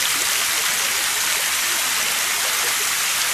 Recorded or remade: recorded